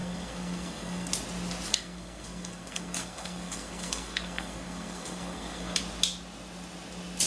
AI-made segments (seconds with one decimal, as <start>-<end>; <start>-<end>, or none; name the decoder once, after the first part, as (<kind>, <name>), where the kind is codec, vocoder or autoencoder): 0.0-1.1 (codec, SNAC); 1.7-5.8